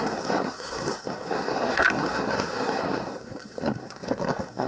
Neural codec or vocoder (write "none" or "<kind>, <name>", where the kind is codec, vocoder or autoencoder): codec, SNAC